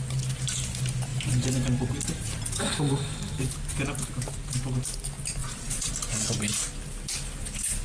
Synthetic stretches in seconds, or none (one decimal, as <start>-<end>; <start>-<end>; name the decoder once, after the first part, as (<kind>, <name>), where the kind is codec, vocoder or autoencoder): 5.4-5.9 (vocoder, Vocos)